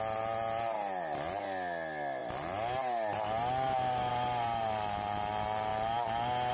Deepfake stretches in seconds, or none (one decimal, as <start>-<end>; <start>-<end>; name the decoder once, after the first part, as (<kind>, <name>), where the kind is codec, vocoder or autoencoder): none